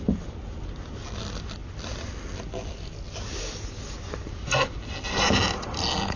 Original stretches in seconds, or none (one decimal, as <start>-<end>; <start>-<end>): 0.0-6.2